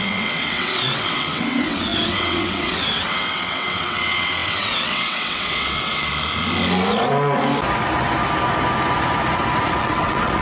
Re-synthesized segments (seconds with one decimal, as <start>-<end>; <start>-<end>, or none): 0.0-6.1; 9.8-10.4

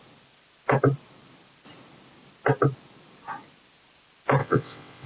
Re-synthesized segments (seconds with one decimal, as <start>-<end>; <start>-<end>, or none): 4.4-5.1

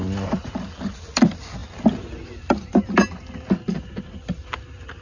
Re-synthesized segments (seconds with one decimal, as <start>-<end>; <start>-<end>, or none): none

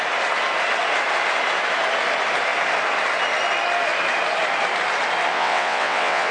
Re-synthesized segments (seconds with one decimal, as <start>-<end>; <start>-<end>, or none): 5.3-6.3

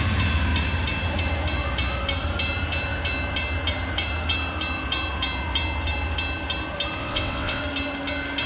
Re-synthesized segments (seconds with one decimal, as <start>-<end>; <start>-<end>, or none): 7.0-7.6

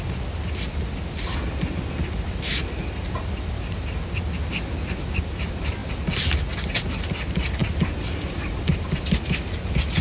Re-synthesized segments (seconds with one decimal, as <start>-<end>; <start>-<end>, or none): none

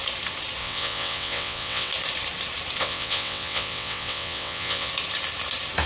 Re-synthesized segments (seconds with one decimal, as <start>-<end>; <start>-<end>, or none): 0.6-1.9; 2.8-4.9